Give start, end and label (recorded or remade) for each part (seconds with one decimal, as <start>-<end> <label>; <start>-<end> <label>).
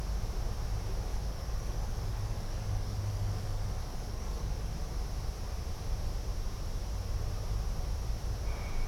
0.0-1.1 recorded; 1.1-4.7 remade; 4.7-8.9 recorded